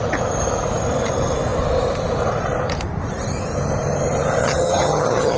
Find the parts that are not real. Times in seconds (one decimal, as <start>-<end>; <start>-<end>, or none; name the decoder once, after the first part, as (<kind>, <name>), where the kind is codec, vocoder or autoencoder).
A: 4.4-5.4 (vocoder, HiFi-GAN)